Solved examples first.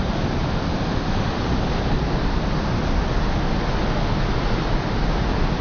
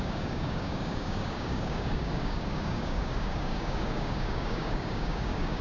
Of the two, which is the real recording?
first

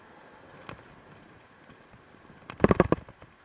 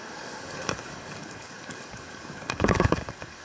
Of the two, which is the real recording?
first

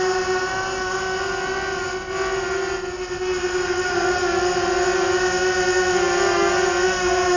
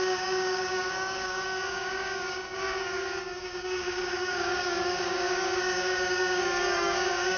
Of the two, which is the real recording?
first